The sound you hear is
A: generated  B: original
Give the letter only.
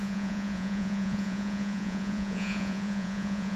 A